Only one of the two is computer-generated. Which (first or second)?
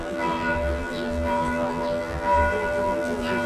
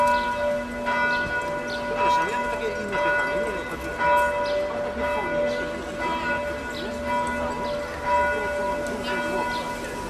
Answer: first